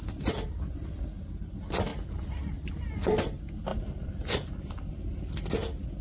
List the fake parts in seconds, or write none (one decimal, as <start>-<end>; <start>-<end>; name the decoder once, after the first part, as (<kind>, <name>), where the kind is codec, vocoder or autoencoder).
1.9-2.7 (vocoder, BigVGAN v2); 3.7-4.9